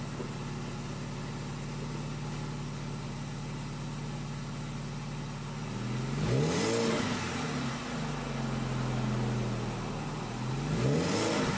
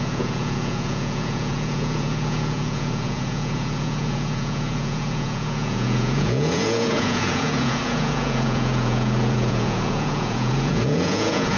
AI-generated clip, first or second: second